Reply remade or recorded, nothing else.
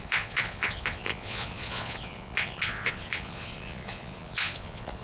remade